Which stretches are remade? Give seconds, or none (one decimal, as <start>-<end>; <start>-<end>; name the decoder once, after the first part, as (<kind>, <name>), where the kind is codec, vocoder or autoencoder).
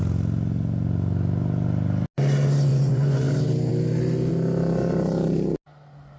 2.7-3.3 (vocoder, Vocos)